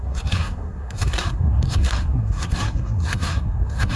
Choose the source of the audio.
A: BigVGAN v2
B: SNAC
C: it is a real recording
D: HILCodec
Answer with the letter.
B